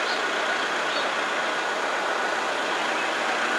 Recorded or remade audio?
recorded